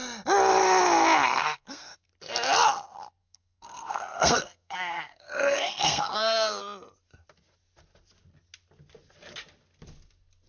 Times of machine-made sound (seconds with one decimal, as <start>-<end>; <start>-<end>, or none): 1.4-2.1; 3.2-6.6